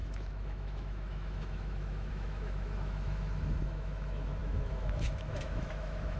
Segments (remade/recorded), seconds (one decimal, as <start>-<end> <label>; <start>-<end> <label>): 0.0-6.2 remade